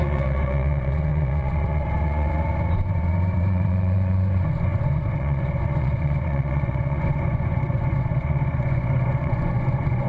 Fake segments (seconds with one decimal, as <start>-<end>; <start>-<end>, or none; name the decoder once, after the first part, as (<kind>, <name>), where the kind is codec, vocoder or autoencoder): 0.0-10.1 (vocoder, Vocos)